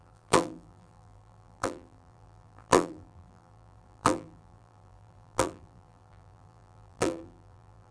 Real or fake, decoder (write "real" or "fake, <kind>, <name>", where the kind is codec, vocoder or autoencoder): fake, vocoder, BigVGAN v2